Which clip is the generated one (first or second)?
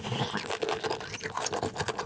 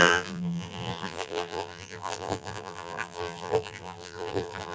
second